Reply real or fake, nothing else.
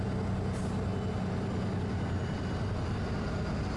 real